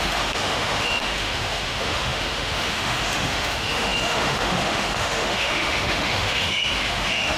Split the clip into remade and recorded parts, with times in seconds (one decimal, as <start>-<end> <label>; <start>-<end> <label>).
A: 0.0-7.4 remade